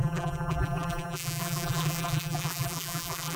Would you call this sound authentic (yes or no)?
no